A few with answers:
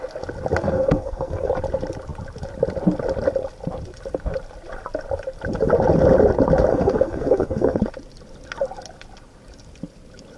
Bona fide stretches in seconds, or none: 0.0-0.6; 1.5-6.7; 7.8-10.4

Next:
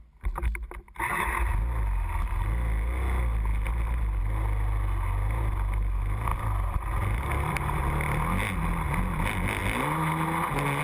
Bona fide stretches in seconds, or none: 0.0-10.8

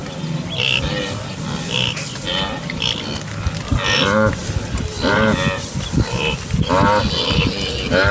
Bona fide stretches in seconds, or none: 0.0-8.1

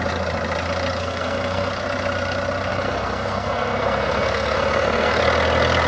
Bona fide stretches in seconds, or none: 0.0-1.0; 1.7-2.7; 5.2-5.9

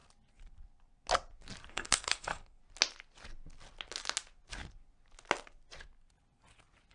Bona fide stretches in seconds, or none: 0.0-1.7; 2.6-6.9

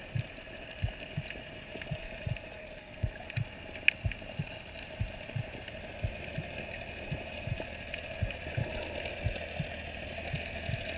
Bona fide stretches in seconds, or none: 0.0-2.6; 3.1-11.0

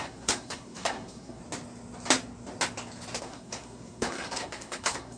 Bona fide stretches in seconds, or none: 1.4-3.2

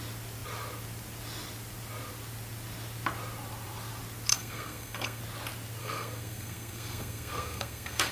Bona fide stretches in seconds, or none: 0.0-4.3; 5.2-5.8